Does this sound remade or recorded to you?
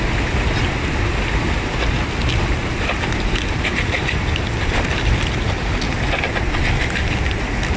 recorded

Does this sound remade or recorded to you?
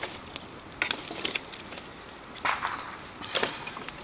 recorded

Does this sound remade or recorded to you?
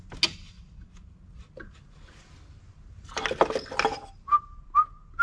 recorded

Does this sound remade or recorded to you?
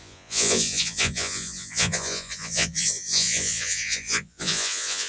remade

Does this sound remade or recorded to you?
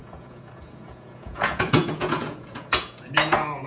remade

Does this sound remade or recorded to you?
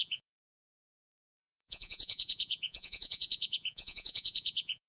remade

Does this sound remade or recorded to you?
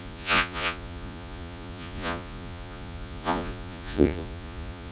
remade